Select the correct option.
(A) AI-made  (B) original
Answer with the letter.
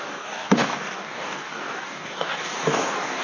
A